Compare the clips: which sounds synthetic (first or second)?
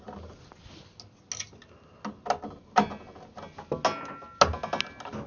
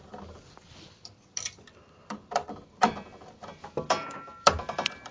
second